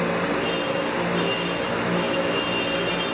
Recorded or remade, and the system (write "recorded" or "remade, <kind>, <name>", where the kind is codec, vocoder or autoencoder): recorded